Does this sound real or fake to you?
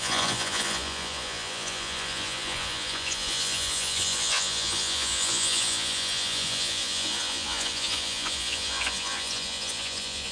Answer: fake